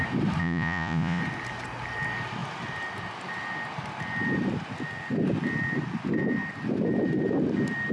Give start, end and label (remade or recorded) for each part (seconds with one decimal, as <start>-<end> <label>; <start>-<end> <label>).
0.0-0.4 recorded; 0.4-1.2 remade; 1.2-7.9 recorded